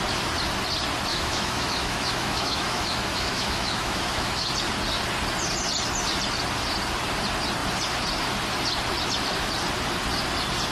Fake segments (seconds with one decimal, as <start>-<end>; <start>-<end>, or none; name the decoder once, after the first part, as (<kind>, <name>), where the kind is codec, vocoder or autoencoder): 1.1-4.5 (autoencoder, DAC-VAE)